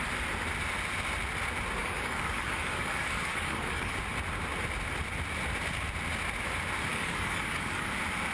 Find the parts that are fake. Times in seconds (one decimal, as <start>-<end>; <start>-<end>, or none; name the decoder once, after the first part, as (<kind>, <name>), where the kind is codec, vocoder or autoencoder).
1.8-3.9 (codec, DAC); 6.9-7.9